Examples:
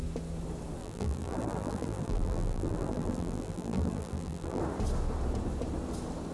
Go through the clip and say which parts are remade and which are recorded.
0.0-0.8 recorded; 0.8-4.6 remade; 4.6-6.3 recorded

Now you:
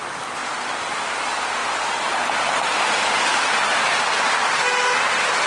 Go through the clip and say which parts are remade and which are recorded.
0.0-5.5 recorded